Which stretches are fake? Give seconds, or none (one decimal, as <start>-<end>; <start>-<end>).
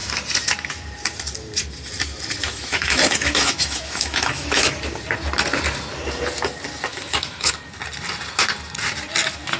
2.5-4.7; 6.9-7.5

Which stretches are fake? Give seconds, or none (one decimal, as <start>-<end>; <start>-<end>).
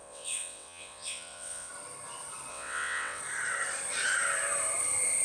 0.0-1.7; 2.5-3.2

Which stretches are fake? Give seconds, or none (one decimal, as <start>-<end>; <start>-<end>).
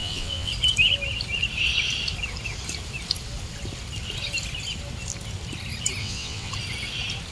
0.0-0.5; 6.0-6.5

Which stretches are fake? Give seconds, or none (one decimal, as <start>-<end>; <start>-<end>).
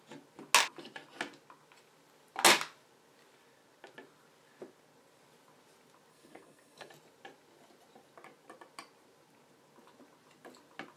6.1-6.9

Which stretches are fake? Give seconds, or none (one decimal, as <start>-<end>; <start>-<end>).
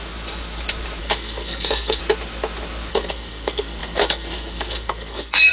1.0-2.0; 2.9-5.5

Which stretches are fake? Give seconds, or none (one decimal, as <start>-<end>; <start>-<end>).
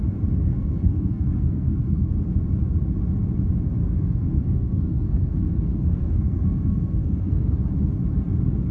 0.5-2.1; 3.8-7.6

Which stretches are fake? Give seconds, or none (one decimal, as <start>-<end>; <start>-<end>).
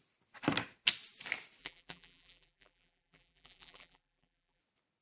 1.6-4.6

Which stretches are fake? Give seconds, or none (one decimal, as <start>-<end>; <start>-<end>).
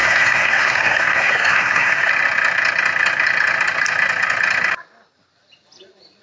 0.0-2.1